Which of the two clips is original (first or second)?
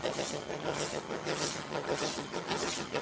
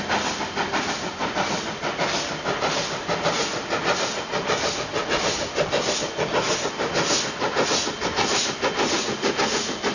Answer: second